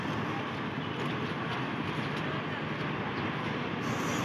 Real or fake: real